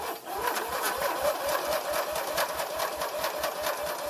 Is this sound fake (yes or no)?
yes